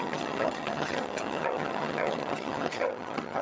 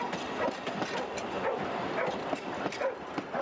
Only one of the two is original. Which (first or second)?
second